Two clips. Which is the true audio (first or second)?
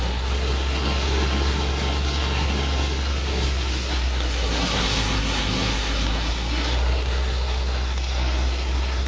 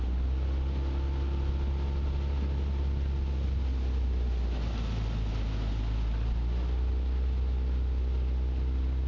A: second